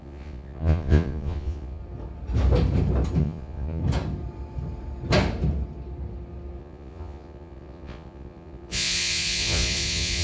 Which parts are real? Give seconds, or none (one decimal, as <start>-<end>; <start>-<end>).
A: 1.8-3.2; 3.8-6.6